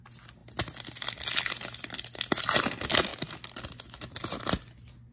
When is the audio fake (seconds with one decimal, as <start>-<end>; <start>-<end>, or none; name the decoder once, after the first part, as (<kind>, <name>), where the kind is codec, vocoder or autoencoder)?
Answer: none